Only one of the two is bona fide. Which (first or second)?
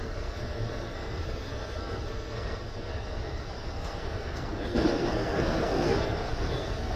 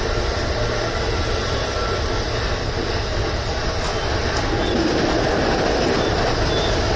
second